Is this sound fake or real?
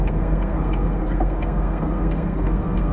fake